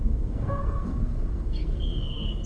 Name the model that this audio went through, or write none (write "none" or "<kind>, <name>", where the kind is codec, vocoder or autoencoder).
codec, SNAC